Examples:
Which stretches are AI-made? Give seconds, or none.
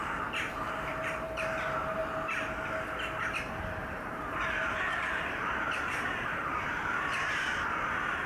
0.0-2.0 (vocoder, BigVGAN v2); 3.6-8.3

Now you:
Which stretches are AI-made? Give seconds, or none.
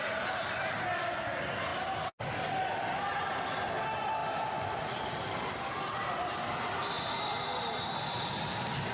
4.2-5.2 (vocoder, BigVGAN v2)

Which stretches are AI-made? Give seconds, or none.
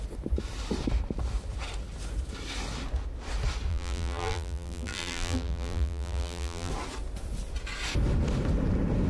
3.7-6.7 (vocoder, BigVGAN v2)